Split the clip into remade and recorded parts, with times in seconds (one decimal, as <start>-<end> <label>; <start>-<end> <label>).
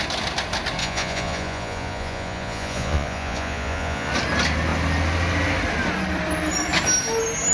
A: 0.0-0.8 recorded; 0.8-4.1 remade; 4.1-7.5 recorded